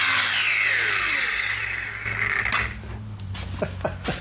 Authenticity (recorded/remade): recorded